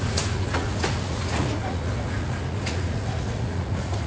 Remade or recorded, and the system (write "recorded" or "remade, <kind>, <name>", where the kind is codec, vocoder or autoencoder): remade, vocoder, Vocos